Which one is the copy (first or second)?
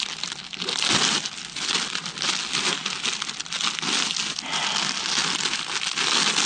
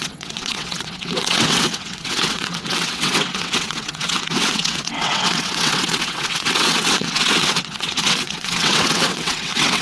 second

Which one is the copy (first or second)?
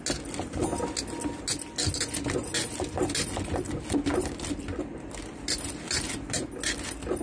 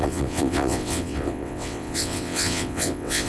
second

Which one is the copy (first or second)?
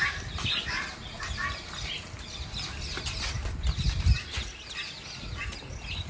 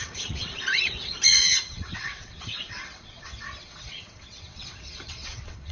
second